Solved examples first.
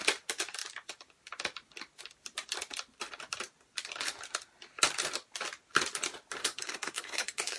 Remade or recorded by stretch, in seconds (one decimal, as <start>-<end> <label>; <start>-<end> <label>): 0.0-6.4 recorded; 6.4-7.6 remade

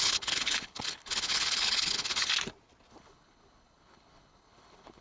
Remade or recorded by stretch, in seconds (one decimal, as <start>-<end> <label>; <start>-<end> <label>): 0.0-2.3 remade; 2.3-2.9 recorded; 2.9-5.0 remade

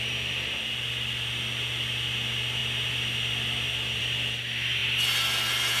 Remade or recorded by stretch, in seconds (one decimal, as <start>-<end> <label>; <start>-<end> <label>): 0.0-5.8 recorded